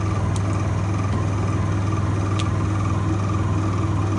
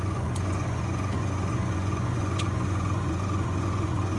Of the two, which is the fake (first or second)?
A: second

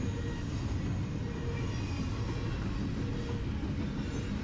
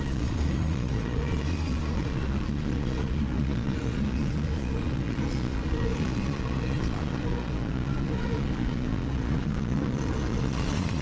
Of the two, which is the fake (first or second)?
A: second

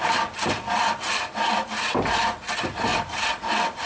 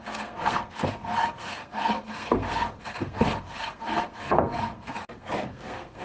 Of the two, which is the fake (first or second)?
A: second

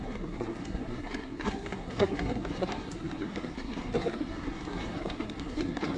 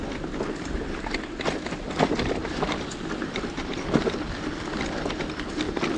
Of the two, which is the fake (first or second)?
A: first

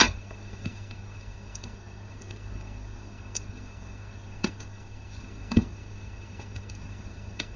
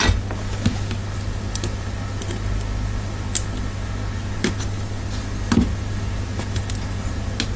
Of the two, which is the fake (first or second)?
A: first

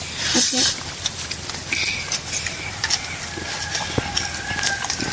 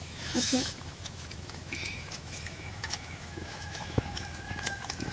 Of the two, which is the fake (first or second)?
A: second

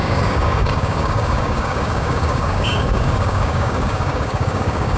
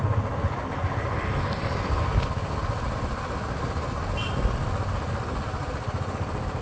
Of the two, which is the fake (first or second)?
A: first